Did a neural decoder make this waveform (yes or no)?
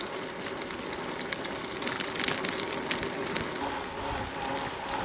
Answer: no